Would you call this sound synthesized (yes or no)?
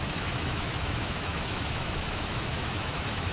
yes